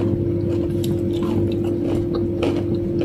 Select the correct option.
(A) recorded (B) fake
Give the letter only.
A